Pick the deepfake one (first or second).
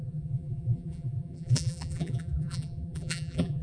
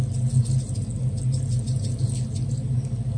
first